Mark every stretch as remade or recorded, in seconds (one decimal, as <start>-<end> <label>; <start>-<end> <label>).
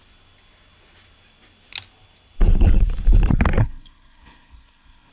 0.0-3.6 recorded; 3.6-5.1 remade